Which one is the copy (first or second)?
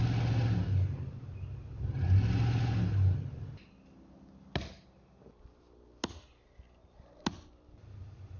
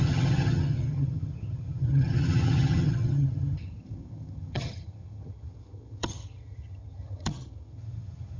second